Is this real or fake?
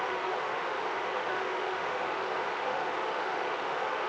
fake